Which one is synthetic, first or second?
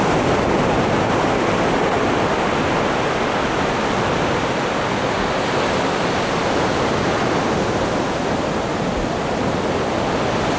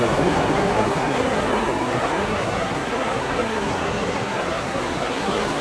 second